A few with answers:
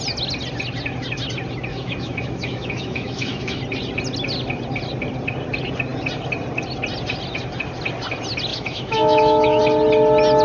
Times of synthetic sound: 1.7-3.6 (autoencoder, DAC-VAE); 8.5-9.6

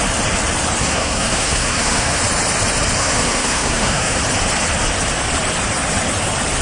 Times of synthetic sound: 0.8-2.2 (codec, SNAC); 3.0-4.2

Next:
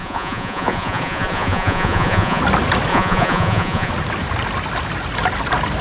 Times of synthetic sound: 0.0-2.4 (vocoder, Vocos); 2.9-3.9

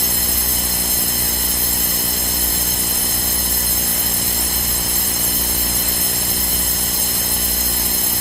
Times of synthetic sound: 3.9-6.4 (vocoder, BigVGAN v2)

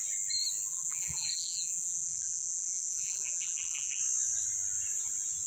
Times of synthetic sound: 0.7-4.0 (vocoder, BigVGAN v2)

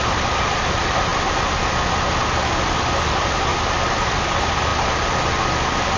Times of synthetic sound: 0.0-1.1 (vocoder, BigVGAN v2); 3.1-3.5; 4.0-4.7

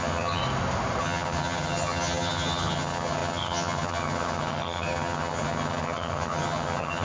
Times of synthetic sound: 0.0-0.4 (vocoder, HiFi-GAN); 1.0-7.0

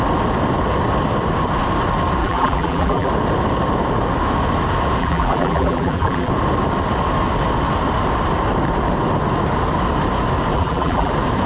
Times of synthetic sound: 2.2-3.1 (vocoder, BigVGAN v2); 5.0-6.3; 10.5-11.1